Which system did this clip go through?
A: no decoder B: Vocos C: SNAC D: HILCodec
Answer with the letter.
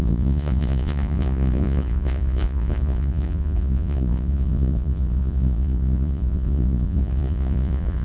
B